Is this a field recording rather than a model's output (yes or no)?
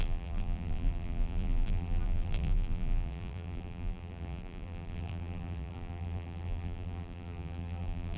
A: no